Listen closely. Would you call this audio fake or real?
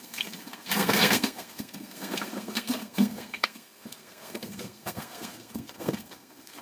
fake